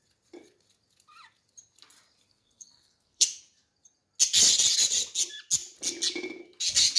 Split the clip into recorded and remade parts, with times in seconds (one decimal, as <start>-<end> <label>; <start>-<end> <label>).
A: 0.0-2.3 recorded; 2.3-3.4 remade; 3.4-7.0 recorded